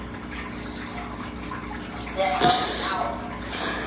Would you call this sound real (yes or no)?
yes